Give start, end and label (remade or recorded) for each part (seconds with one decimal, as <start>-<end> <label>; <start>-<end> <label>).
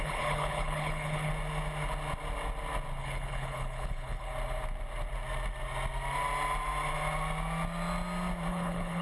0.0-1.3 remade; 1.3-3.0 recorded; 3.0-4.3 remade; 4.3-8.5 recorded; 8.5-9.0 remade